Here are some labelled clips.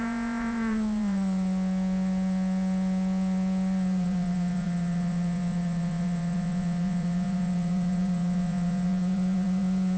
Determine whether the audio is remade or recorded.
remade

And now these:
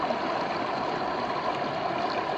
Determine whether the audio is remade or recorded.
recorded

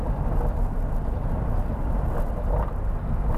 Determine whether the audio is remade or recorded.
recorded